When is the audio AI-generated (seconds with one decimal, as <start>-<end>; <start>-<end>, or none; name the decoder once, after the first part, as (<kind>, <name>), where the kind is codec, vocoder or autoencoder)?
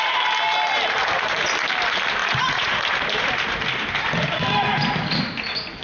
2.2-2.8 (vocoder, Vocos)